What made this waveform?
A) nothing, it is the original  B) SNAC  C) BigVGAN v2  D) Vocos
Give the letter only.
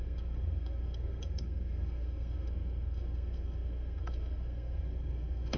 B